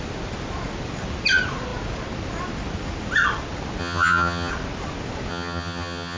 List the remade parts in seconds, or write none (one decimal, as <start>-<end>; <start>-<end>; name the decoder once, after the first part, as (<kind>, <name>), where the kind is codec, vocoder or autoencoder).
3.8-4.5 (vocoder, HiFi-GAN); 5.3-6.2